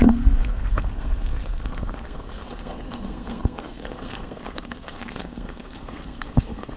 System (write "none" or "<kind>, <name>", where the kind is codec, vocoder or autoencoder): codec, SNAC